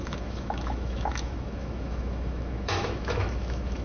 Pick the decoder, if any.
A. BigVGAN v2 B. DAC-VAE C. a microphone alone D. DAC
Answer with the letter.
B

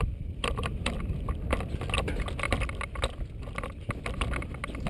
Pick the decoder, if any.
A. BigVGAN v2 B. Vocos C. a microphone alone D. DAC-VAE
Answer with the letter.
C